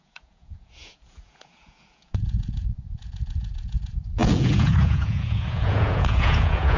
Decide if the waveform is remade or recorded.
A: remade